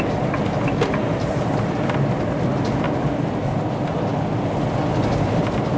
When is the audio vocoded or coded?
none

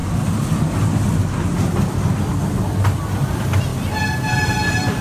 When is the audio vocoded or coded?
none

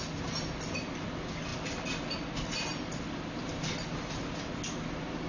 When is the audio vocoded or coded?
none